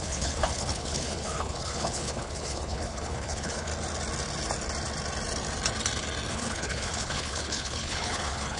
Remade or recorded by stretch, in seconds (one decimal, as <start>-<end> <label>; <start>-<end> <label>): 0.0-3.7 remade; 3.7-6.3 recorded; 6.3-8.6 remade